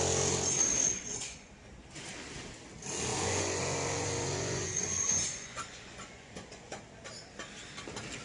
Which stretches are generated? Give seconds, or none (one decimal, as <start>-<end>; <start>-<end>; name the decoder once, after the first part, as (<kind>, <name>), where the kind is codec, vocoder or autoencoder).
0.8-1.5 (vocoder, Vocos); 3.1-6.8